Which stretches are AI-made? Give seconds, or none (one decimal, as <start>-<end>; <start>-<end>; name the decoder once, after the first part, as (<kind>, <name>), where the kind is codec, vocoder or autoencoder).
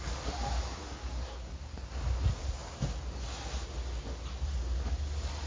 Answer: 0.8-1.5 (codec, SNAC)